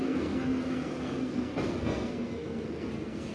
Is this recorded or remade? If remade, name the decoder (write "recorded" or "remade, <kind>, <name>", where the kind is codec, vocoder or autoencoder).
remade, codec, SNAC